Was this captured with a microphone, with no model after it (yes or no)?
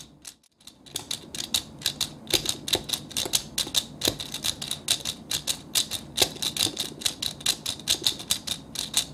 yes